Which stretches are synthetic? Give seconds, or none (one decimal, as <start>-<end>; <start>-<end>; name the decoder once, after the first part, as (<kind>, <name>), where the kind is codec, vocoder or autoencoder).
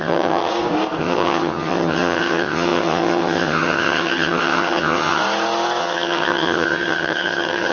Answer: 0.0-0.5 (vocoder, HiFi-GAN); 1.0-5.2; 5.8-7.7